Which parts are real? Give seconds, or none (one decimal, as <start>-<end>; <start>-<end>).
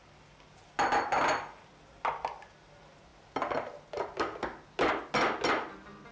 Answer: 0.0-6.1